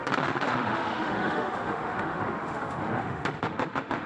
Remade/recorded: remade